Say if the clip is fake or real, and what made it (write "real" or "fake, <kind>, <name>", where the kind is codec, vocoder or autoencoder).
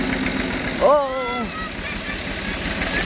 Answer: real